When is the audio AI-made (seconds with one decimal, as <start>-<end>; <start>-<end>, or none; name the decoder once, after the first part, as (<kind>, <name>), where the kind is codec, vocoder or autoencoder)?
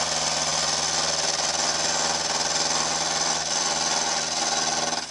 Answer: none